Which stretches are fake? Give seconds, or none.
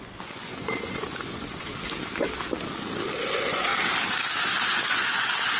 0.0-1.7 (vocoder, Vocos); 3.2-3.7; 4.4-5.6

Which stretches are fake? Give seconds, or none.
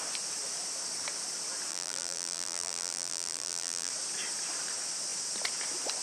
1.7-3.9 (vocoder, BigVGAN v2)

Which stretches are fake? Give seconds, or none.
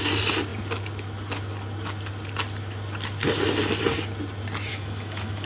4.7-5.5 (autoencoder, DAC-VAE)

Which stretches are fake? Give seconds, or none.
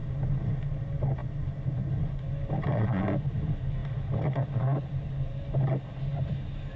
none